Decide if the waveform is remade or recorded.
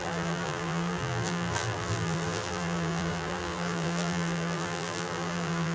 remade